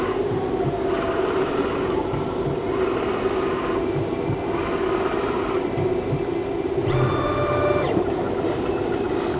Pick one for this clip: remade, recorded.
recorded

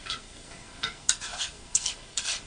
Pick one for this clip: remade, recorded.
remade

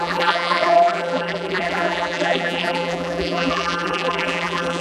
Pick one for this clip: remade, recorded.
remade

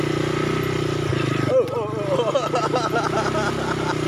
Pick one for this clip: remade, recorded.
recorded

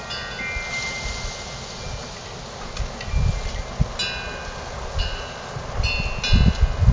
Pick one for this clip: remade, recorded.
recorded